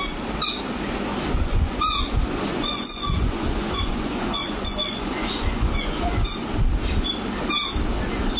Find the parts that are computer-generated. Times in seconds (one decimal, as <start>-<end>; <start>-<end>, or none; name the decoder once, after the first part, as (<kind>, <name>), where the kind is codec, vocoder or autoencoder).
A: 1.4-6.4 (vocoder, Vocos)